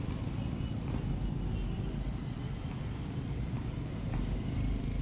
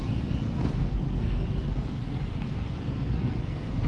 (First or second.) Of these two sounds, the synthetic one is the second